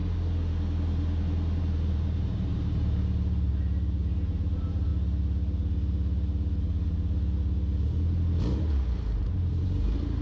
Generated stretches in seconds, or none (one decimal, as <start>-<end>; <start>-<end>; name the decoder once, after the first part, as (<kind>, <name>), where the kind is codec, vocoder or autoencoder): 1.6-4.9 (vocoder, BigVGAN v2); 8.4-10.2